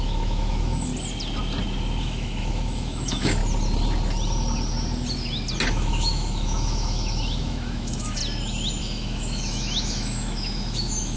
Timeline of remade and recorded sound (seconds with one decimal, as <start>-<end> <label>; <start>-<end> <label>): 0.0-0.9 remade; 0.9-2.0 recorded; 2.0-3.4 remade; 3.4-5.7 recorded; 5.7-8.2 remade; 8.2-8.8 recorded; 8.8-11.2 remade